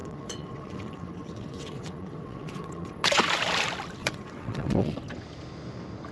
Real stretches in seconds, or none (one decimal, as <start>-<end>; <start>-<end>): 3.2-4.0; 5.0-6.1